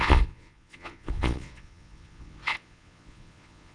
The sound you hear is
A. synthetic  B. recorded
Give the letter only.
A